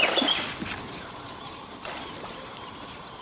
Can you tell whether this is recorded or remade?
remade